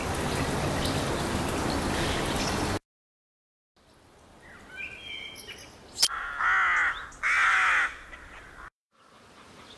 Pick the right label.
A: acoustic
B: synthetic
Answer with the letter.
A